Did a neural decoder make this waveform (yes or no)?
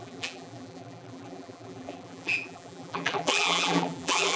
yes